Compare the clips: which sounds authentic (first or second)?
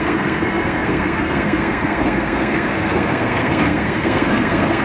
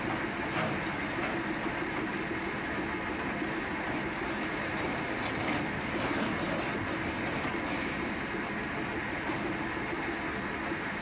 second